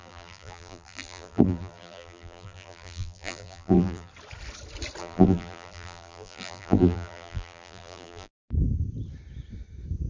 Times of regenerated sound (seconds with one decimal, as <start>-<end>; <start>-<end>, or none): 0.0-4.1; 5.0-8.3